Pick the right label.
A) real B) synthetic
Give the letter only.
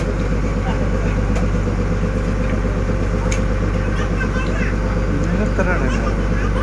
A